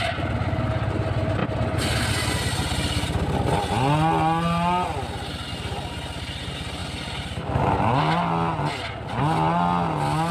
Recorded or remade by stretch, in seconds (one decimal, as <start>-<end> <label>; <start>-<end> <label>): 0.0-10.3 recorded